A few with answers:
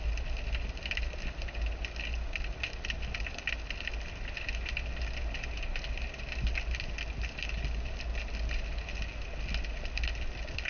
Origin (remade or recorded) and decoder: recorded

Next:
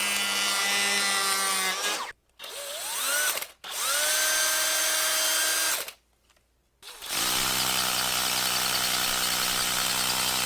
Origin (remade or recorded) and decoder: recorded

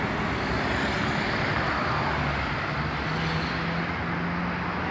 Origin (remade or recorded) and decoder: recorded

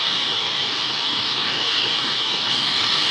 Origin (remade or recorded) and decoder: remade, codec, DAC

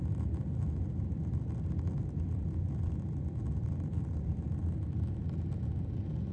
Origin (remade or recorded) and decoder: recorded